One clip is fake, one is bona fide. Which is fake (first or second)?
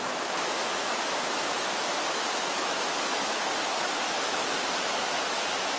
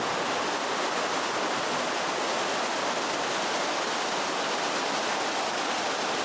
first